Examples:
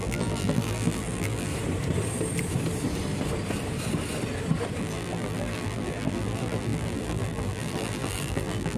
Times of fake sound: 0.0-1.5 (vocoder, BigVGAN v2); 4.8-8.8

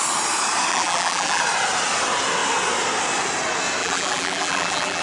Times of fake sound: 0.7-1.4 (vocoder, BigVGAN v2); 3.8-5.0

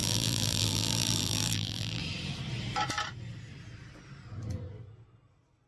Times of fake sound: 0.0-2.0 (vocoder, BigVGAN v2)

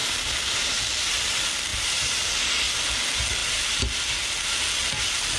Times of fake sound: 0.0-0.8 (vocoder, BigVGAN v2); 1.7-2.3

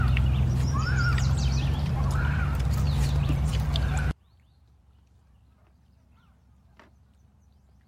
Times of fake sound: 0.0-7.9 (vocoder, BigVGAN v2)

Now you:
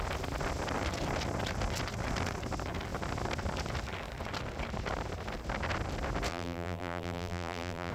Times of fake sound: 6.3-7.9 (vocoder, BigVGAN v2)

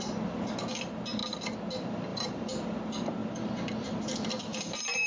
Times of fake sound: 2.1-2.8 (vocoder, BigVGAN v2); 3.2-4.1; 4.5-5.1

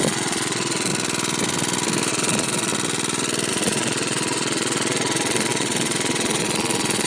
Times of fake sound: 0.0-0.9 (vocoder, Vocos); 2.1-2.7; 3.5-7.1